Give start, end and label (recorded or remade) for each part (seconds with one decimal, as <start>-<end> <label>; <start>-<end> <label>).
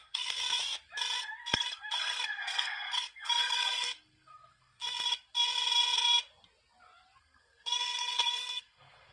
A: 0.0-0.4 remade; 0.4-1.2 recorded; 1.2-4.8 remade; 4.8-7.2 recorded; 7.2-9.1 remade